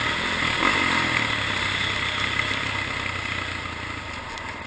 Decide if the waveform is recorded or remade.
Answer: recorded